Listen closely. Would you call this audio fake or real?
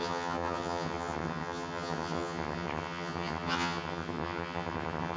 fake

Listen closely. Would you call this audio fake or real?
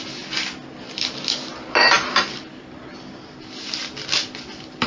real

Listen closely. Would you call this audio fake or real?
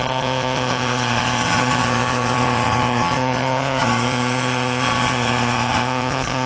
fake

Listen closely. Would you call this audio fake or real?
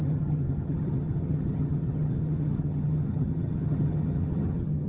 fake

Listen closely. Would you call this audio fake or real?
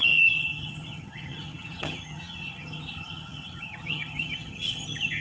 fake